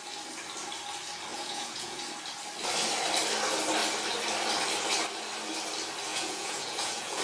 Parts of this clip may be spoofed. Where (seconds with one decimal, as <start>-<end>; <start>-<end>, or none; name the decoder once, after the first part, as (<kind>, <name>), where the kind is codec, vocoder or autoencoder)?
1.3-2.0 (vocoder, Vocos); 6.1-7.2